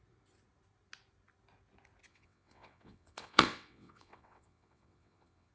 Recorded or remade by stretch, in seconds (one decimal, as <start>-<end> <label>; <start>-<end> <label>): 0.0-2.1 recorded; 2.1-5.5 remade